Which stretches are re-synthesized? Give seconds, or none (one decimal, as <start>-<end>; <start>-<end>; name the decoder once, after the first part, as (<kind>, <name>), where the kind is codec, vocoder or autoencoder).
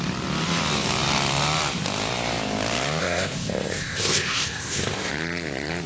3.0-5.1 (codec, ZipCodec)